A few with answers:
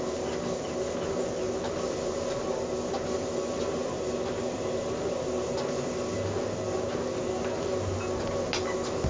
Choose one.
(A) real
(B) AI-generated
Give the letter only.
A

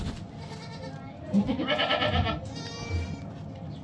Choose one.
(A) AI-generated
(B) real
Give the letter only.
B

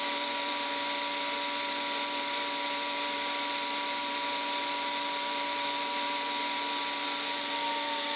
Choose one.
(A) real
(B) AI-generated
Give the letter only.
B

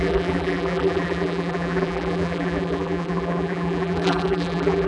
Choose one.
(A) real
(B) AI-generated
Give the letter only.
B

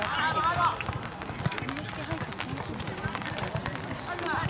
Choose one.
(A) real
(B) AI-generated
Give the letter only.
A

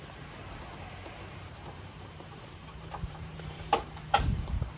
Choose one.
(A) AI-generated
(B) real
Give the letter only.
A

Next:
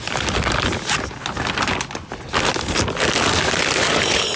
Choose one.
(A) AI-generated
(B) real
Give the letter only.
B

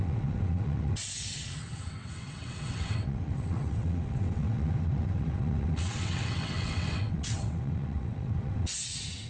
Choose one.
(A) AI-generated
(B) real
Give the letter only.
A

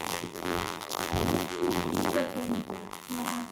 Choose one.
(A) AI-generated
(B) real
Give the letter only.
A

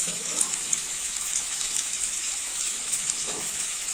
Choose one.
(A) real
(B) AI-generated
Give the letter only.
B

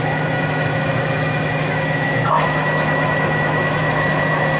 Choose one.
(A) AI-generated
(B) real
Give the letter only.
A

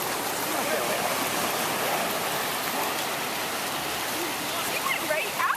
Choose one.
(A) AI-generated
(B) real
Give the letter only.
B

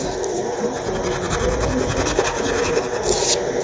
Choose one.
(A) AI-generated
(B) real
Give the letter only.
B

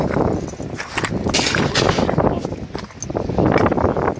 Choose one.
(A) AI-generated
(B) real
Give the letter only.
B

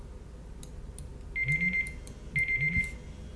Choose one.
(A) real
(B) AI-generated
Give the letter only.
A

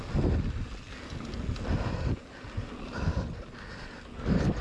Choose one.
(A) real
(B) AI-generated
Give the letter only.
A